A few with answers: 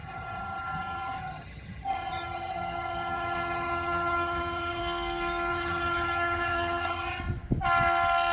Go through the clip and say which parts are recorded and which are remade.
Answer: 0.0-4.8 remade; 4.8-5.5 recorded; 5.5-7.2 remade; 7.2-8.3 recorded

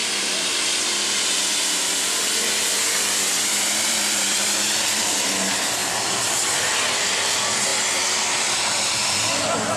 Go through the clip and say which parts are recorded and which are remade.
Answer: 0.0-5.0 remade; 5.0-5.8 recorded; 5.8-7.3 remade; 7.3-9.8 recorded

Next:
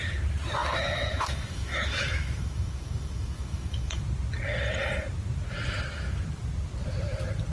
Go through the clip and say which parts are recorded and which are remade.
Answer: 0.0-0.6 recorded; 0.6-4.0 remade; 4.0-7.5 recorded

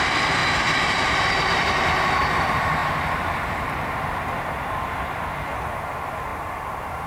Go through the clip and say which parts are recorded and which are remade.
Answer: 0.0-0.4 recorded; 0.4-2.3 remade; 2.3-2.8 recorded; 2.8-4.0 remade; 4.0-7.1 recorded

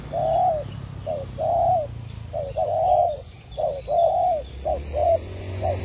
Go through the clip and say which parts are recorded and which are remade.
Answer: 0.0-3.0 recorded; 3.0-3.5 remade; 3.5-5.0 recorded; 5.0-5.8 remade